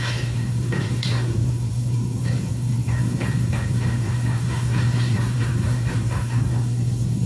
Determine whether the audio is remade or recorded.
remade